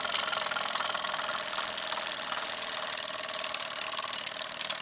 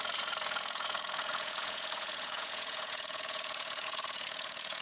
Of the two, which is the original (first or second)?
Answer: first